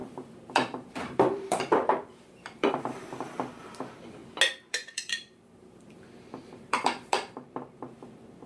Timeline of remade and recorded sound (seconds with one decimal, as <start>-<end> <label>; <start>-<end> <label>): 0.0-4.2 remade; 4.2-4.7 recorded; 4.7-8.5 remade